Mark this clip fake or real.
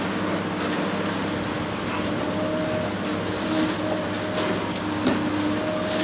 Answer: real